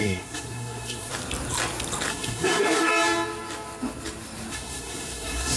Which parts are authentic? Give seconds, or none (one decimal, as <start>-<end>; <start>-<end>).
1.1-2.1; 2.9-4.5